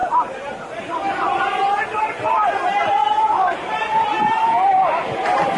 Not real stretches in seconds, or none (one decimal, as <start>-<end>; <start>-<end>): none